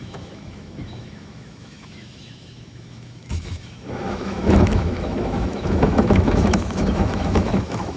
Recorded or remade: remade